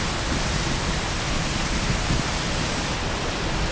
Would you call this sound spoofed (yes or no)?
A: no